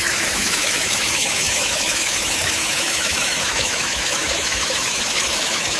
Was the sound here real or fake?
fake